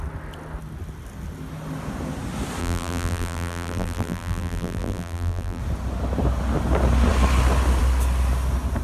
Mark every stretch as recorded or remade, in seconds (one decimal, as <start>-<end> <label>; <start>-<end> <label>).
0.0-2.6 recorded; 2.6-5.6 remade; 5.6-8.8 recorded

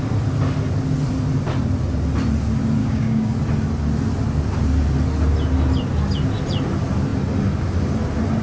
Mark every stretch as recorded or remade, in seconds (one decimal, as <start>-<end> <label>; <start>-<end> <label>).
0.0-2.8 recorded; 2.8-3.4 remade; 3.4-8.4 recorded

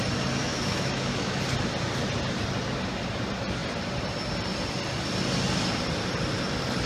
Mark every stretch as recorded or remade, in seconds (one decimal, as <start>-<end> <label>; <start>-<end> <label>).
0.0-0.4 recorded; 0.4-1.4 remade; 1.4-6.9 recorded

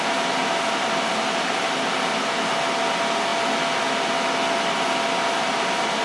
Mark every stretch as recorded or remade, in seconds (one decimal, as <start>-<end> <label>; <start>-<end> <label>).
0.0-6.0 recorded

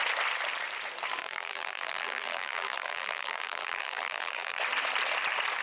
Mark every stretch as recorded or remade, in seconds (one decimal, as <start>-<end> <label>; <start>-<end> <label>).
0.0-1.2 recorded; 1.2-4.6 remade; 4.6-5.6 recorded

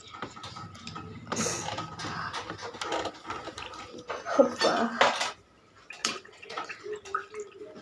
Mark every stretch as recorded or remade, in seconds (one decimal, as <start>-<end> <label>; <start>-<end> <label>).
0.0-6.0 recorded; 6.0-6.7 remade; 6.7-7.8 recorded

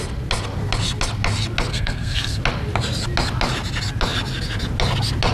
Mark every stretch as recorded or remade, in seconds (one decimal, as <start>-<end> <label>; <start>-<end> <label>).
0.0-1.7 recorded; 1.7-2.4 remade; 2.4-5.3 recorded

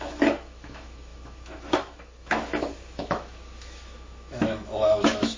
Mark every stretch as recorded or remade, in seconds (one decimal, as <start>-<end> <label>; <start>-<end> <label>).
0.0-5.4 remade